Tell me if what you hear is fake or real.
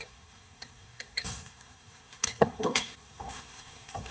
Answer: fake